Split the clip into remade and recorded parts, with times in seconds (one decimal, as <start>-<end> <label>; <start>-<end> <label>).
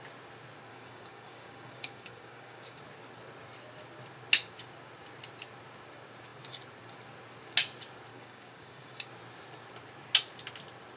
0.0-0.7 recorded; 0.7-2.8 remade; 2.8-8.1 recorded; 8.1-9.1 remade; 9.1-11.0 recorded